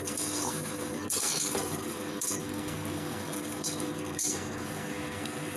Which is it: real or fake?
fake